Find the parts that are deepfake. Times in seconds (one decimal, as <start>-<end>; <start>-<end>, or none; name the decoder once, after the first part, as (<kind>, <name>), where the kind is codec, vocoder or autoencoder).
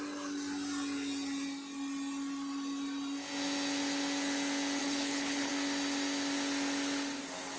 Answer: 4.8-5.5 (codec, HILCodec)